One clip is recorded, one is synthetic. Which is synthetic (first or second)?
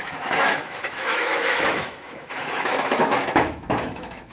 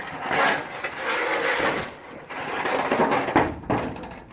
first